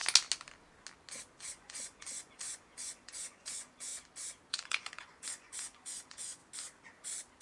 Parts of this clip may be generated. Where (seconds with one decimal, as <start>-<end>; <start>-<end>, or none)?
1.4-3.9; 4.5-6.4